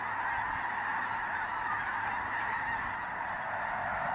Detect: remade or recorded recorded